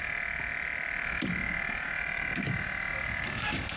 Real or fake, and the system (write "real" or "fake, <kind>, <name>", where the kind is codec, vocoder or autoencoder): real